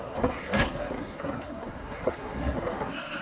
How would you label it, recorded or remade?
remade